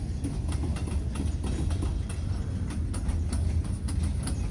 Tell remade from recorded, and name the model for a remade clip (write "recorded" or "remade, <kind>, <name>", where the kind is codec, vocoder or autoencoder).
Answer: recorded